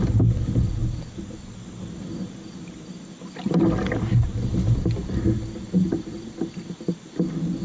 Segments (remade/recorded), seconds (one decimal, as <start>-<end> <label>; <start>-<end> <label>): 0.0-7.6 recorded